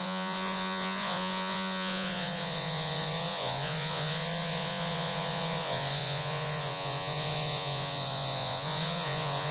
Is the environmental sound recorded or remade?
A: remade